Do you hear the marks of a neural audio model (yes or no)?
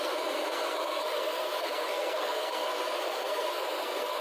yes